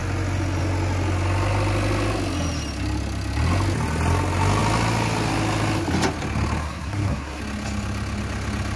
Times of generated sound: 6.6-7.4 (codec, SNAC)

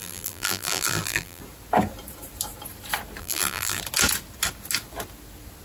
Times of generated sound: 0.0-1.4 (vocoder, BigVGAN v2); 3.2-3.8

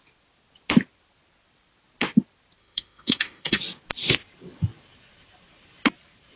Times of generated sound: 2.6-3.6 (autoencoder, DAC-VAE)

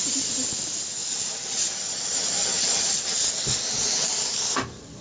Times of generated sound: 1.0-3.6 (vocoder, BigVGAN v2)